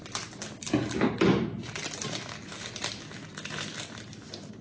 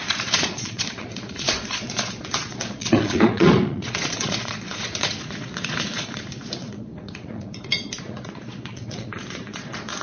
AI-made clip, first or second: second